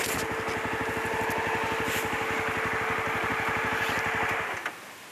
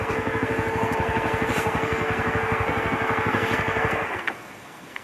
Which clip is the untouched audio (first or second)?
first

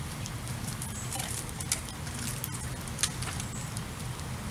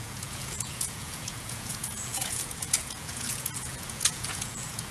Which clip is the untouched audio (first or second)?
first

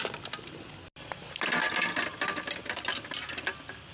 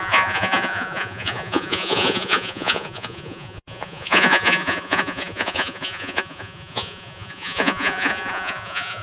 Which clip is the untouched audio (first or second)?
first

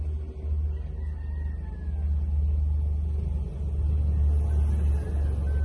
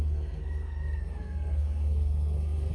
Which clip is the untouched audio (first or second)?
first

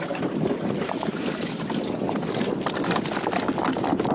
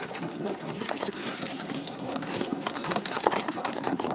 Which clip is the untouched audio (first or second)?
first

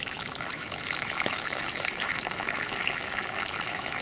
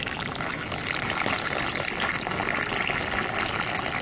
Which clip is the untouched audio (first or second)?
second